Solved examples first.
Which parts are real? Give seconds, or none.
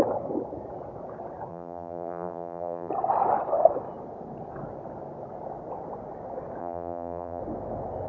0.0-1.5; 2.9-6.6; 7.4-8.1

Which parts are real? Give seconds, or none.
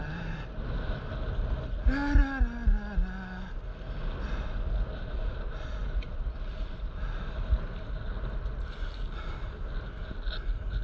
0.0-10.8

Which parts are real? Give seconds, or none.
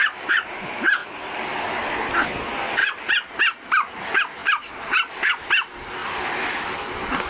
0.0-2.8; 3.3-4.4; 5.4-7.3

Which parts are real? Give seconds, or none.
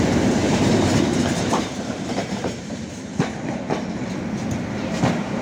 0.0-0.4; 3.6-5.4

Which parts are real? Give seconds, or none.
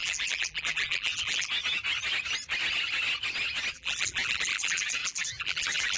1.5-3.7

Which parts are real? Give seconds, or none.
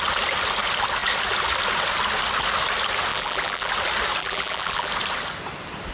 0.0-3.1; 3.7-4.2; 4.9-5.9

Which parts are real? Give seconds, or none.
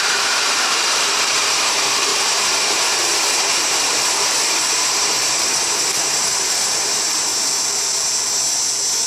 7.3-9.1